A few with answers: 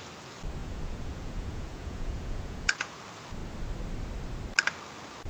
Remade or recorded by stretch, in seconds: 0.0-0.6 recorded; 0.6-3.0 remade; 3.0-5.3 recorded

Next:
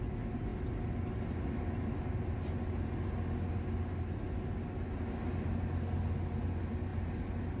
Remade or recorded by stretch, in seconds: 0.0-7.6 recorded

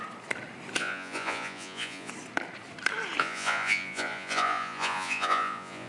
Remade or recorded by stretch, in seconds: 0.0-0.8 recorded; 0.8-2.1 remade; 2.1-3.2 recorded; 3.2-5.9 remade

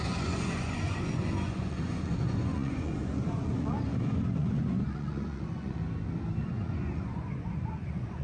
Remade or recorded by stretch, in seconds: 0.0-5.8 remade; 5.8-6.4 recorded; 6.4-8.2 remade

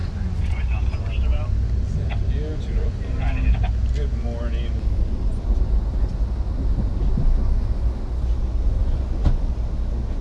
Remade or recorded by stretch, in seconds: 0.0-0.6 remade; 0.6-8.8 recorded; 8.8-9.5 remade; 9.5-10.2 recorded

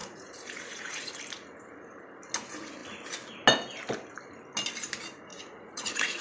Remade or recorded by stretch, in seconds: 0.0-1.1 remade; 1.1-5.3 recorded; 5.3-6.2 remade

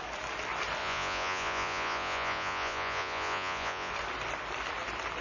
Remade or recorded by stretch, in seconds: 0.0-0.8 recorded; 0.8-3.9 remade; 3.9-5.2 recorded